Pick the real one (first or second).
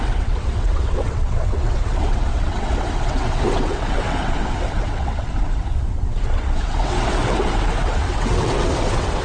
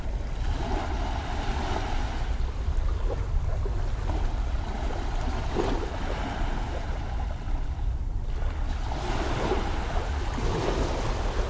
second